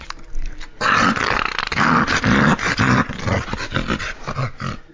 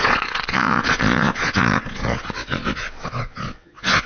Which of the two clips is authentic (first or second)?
first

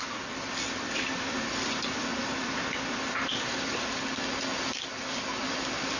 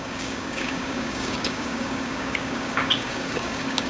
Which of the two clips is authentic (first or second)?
first